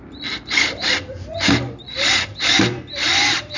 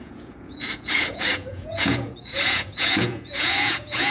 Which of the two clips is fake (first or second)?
second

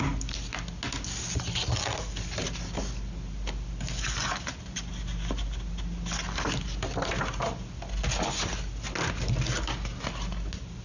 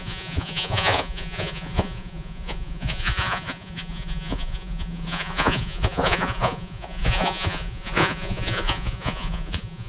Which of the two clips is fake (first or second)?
second